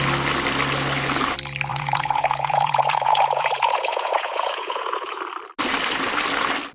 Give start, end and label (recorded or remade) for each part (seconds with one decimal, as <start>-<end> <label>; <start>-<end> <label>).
0.0-1.7 recorded; 1.7-5.2 remade; 5.2-6.7 recorded